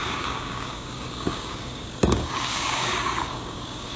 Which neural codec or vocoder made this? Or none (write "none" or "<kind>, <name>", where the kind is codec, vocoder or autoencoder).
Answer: codec, DAC